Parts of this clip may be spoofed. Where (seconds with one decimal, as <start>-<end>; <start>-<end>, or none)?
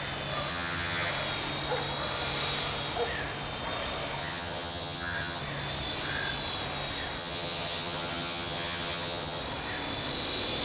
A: 0.5-1.1; 4.2-5.4; 7.2-9.4